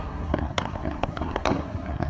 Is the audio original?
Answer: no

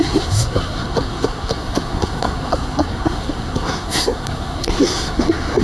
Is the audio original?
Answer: no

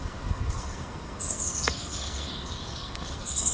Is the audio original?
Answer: no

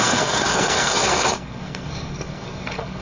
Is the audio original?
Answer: no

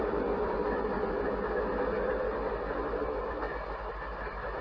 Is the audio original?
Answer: yes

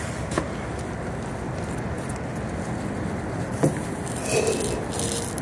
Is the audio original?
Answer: yes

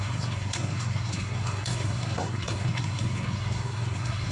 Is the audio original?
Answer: no